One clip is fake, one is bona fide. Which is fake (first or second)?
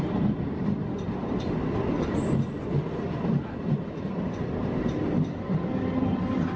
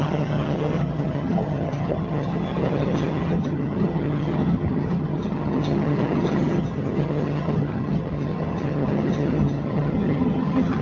second